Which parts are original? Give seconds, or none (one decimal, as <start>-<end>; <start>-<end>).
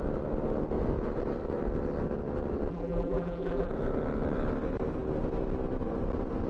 0.0-2.7; 3.7-6.5